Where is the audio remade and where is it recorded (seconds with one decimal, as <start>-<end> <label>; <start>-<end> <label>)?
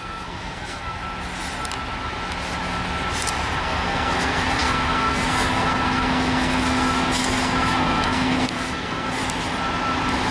0.0-1.0 remade; 1.0-3.6 recorded; 3.6-9.2 remade; 9.2-10.3 recorded